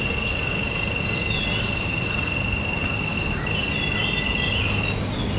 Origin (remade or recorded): recorded